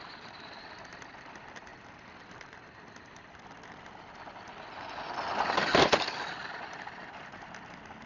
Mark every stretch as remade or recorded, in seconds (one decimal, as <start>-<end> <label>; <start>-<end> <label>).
0.0-8.1 recorded